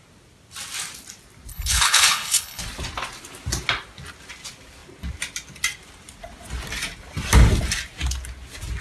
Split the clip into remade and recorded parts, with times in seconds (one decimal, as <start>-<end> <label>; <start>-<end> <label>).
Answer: 0.0-1.5 recorded; 1.5-2.6 remade; 2.6-8.8 recorded